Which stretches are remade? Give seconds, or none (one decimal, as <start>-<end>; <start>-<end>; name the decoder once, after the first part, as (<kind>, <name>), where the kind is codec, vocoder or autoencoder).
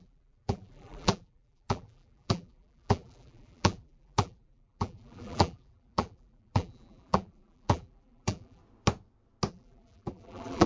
0.0-8.6 (vocoder, BigVGAN v2); 9.5-10.7